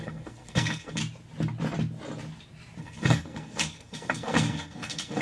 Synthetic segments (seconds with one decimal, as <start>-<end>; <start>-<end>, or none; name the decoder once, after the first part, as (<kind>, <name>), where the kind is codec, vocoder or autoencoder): 0.0-1.0 (codec, SNAC); 2.8-5.2